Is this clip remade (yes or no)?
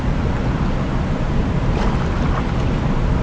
no